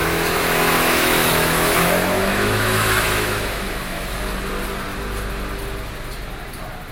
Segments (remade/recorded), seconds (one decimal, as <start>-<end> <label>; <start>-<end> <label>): 0.0-4.1 remade; 4.1-6.9 recorded